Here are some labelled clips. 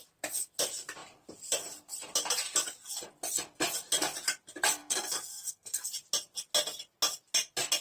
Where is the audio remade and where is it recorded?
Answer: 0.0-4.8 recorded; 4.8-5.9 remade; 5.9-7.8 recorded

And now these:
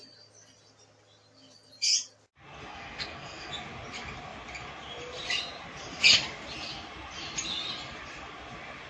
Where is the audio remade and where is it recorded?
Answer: 0.0-2.7 recorded; 2.7-3.5 remade; 3.5-8.9 recorded

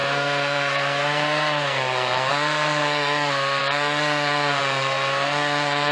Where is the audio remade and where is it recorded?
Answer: 0.0-5.9 remade

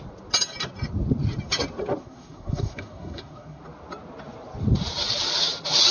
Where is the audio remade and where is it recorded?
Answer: 0.0-2.0 recorded; 2.0-3.6 remade; 3.6-5.9 recorded